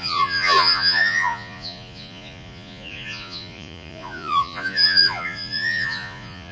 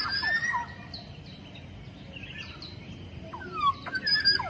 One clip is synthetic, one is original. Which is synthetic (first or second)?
first